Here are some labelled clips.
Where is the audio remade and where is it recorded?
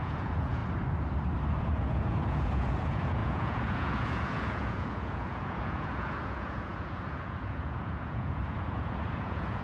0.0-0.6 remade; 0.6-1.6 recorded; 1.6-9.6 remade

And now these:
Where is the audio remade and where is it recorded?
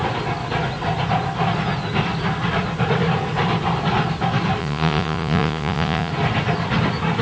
0.0-4.6 recorded; 4.6-6.1 remade; 6.1-7.2 recorded